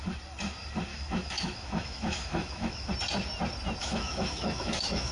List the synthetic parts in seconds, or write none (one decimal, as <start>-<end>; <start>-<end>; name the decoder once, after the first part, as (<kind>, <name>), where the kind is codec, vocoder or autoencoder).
0.9-2.9 (autoencoder, DAC-VAE); 3.8-5.1